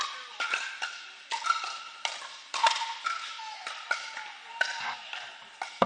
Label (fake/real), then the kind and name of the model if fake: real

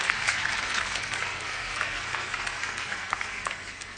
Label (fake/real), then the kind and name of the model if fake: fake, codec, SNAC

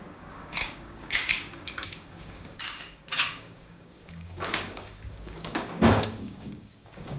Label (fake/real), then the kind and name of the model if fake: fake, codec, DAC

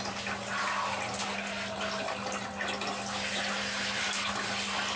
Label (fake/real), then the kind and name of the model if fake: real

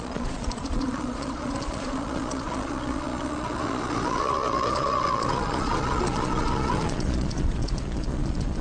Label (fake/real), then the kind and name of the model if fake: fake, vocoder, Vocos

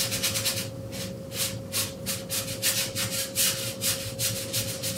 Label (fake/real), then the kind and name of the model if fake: real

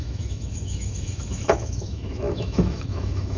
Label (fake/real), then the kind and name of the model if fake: fake, autoencoder, DAC-VAE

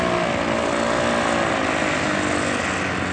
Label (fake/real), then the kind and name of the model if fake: real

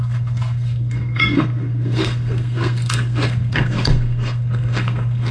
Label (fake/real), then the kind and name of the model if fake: fake, codec, SNAC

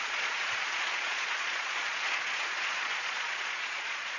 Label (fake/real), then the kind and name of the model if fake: fake, vocoder, Vocos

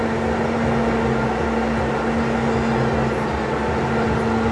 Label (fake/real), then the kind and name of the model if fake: real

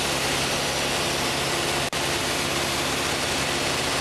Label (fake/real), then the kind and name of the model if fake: real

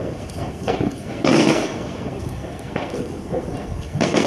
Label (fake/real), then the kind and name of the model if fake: fake, codec, SNAC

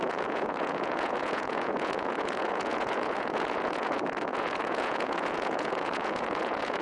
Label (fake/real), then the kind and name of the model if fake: fake, vocoder, Vocos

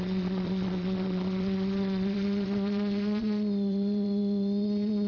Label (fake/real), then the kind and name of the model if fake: fake, vocoder, Vocos